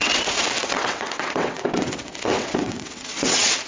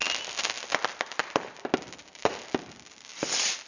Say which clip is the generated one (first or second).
first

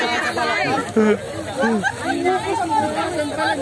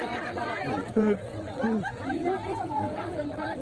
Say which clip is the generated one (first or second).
second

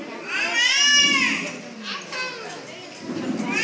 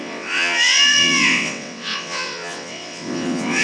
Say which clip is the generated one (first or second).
second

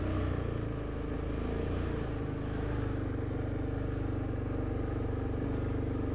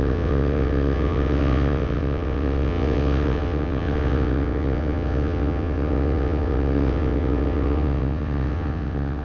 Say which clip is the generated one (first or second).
second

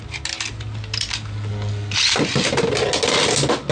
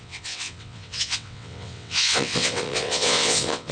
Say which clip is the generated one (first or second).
second